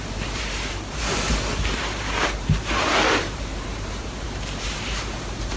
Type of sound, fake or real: fake